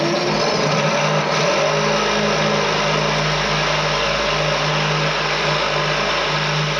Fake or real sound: real